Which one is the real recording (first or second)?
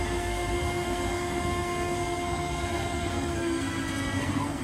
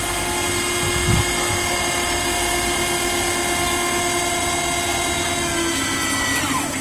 second